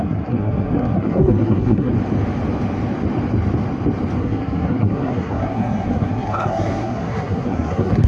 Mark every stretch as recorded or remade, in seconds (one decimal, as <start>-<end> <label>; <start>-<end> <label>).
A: 0.0-1.9 remade; 1.9-4.2 recorded; 4.2-8.1 remade